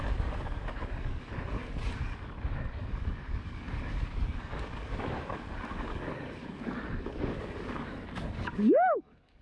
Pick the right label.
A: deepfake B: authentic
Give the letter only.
A